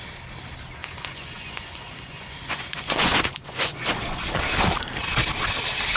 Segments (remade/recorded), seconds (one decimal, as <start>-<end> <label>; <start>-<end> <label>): 0.0-0.8 recorded; 0.8-4.4 remade; 4.4-6.0 recorded